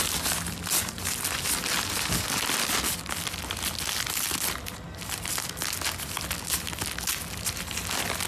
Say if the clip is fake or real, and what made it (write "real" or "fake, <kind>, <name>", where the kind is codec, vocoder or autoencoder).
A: real